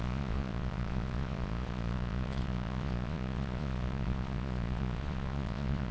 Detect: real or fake fake